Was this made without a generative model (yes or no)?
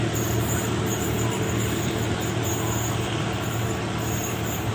yes